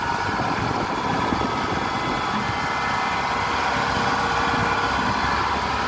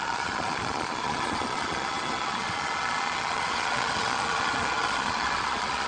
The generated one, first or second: second